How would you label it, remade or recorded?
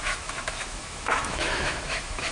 remade